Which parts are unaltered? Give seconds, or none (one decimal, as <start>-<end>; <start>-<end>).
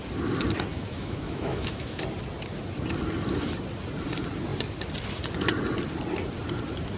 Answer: 0.0-0.7; 2.0-7.0